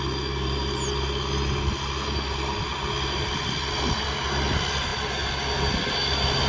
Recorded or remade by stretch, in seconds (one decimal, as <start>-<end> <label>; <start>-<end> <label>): 0.0-6.5 recorded